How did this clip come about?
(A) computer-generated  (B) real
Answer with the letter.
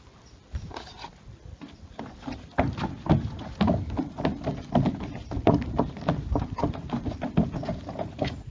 B